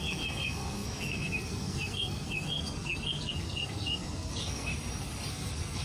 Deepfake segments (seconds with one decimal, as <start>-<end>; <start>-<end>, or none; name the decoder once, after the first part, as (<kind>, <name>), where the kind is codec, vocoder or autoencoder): 0.0-4.7 (codec, SNAC); 5.3-5.8